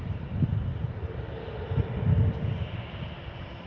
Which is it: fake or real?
real